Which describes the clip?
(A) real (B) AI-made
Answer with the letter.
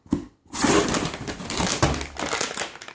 A